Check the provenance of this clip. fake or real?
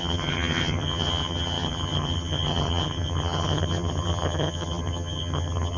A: fake